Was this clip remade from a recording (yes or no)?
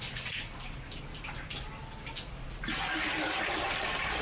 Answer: no